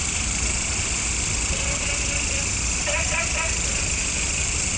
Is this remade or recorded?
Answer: recorded